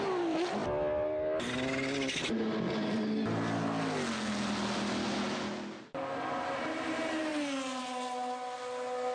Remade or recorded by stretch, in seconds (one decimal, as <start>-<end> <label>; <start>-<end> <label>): 0.0-9.1 recorded